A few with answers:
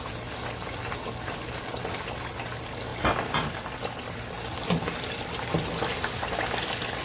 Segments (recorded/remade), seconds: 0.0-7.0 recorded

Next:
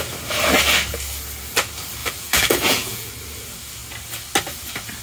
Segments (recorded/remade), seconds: 0.0-2.0 recorded; 2.0-3.1 remade; 3.1-5.0 recorded

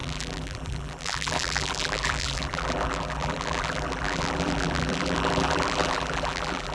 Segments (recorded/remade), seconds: 0.0-6.7 remade

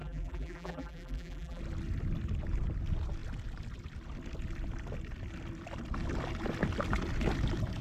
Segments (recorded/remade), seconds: 0.0-1.6 remade; 1.6-7.8 recorded

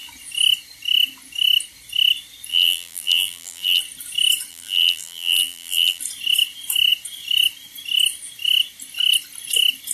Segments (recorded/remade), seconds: 0.0-2.5 recorded; 2.5-3.8 remade; 3.8-4.5 recorded; 4.5-6.0 remade; 6.0-9.9 recorded

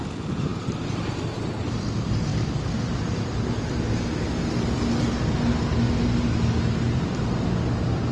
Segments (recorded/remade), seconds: 0.0-0.5 recorded; 0.5-1.2 remade; 1.2-8.1 recorded

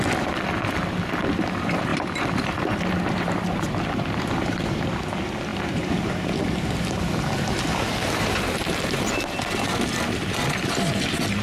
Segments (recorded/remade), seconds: 0.0-1.9 recorded; 1.9-4.9 remade; 4.9-5.5 recorded; 5.5-6.3 remade; 6.3-11.4 recorded